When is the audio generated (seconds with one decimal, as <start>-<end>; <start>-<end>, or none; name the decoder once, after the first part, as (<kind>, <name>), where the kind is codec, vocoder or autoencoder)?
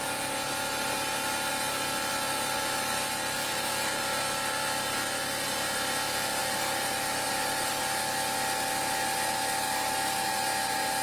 6.4-7.8 (vocoder, BigVGAN v2)